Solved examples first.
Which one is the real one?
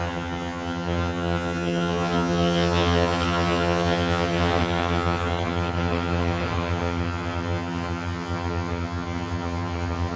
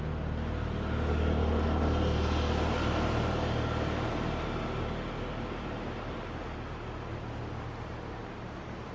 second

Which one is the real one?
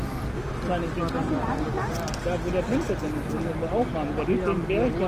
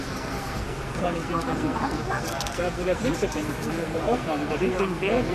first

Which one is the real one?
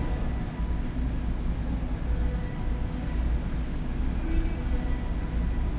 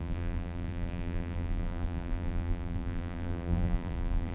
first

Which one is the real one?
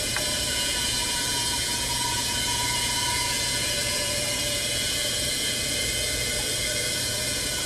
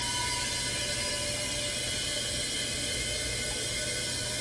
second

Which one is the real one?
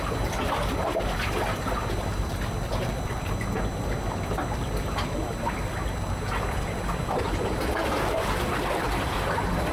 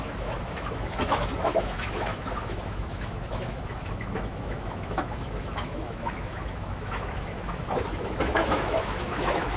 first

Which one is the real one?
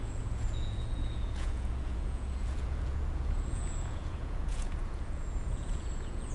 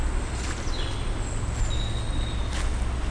second